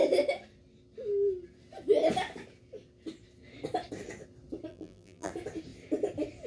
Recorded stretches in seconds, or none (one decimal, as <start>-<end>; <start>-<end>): 0.0-4.7; 5.3-6.5